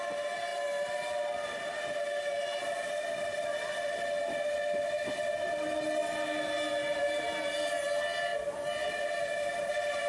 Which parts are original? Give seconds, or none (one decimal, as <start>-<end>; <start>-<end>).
0.0-10.1